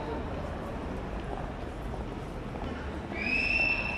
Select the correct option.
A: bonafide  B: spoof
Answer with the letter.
A